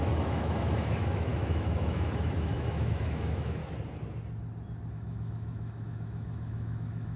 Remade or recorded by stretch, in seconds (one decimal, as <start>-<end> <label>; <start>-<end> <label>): 0.0-3.6 remade; 3.6-4.9 recorded; 4.9-7.2 remade